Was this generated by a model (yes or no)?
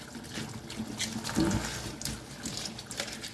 no